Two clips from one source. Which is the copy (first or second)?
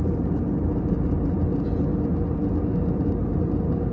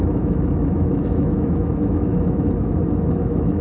second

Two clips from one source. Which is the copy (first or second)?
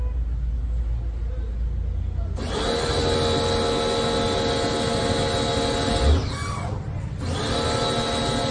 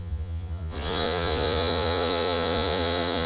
second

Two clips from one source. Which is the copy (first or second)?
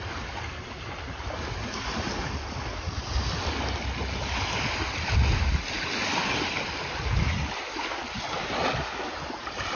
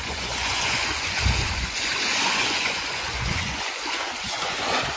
second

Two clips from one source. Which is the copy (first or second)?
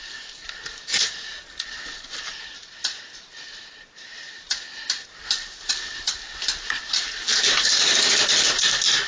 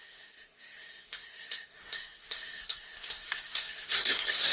second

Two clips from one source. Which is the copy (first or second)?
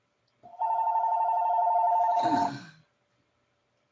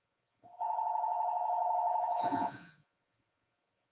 second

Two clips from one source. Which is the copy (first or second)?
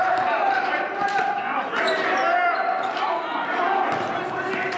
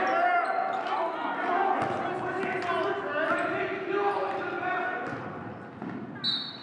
first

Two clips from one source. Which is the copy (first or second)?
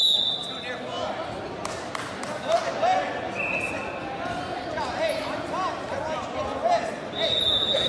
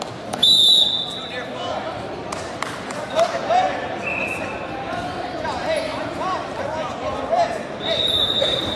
second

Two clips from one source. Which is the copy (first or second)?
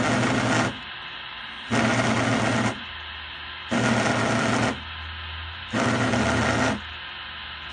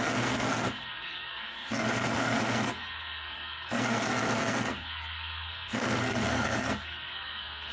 second